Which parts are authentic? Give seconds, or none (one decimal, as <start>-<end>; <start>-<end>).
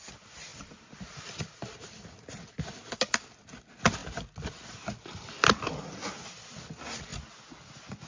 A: 0.0-0.5; 1.8-8.1